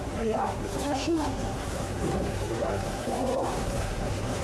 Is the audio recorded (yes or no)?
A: no